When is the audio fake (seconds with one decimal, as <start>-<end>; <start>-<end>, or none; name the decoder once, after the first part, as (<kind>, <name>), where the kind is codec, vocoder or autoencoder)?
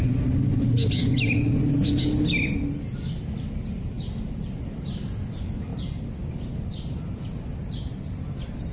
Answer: none